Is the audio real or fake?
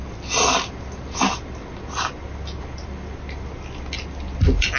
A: real